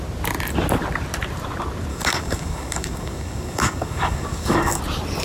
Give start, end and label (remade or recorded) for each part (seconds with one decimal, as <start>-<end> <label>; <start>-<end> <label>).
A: 0.0-1.9 recorded; 1.9-4.8 remade; 4.8-5.2 recorded